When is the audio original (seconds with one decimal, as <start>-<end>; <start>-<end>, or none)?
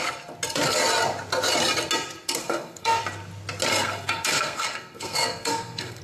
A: 0.0-2.4; 3.0-3.7